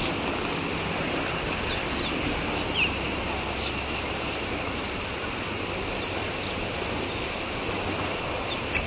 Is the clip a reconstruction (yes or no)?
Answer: no